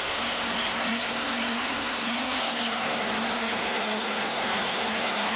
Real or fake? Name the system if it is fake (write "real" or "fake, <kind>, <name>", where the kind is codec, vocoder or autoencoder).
fake, codec, SNAC